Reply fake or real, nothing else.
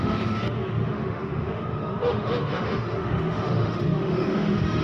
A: fake